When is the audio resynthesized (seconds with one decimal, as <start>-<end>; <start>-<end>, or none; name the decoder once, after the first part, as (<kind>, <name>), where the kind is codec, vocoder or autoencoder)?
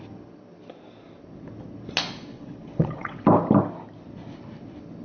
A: 2.3-3.2 (vocoder, WaveNeXt)